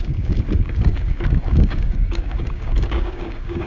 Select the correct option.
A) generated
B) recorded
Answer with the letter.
A